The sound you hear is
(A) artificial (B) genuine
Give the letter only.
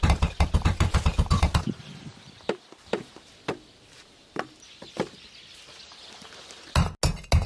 B